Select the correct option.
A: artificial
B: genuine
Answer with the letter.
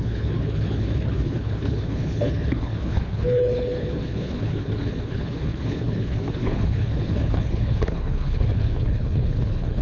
A